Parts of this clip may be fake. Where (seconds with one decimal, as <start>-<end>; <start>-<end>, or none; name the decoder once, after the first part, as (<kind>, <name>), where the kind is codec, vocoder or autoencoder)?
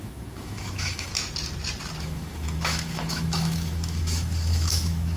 0.0-1.1 (autoencoder, DAC-VAE); 2.0-5.2